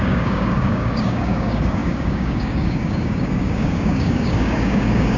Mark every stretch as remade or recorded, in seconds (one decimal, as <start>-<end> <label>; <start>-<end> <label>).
0.0-5.2 remade